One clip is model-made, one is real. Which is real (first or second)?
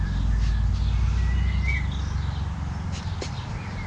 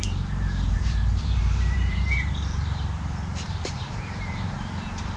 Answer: first